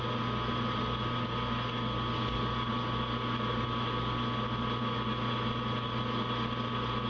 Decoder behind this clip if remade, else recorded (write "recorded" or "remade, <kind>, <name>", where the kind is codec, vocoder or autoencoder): recorded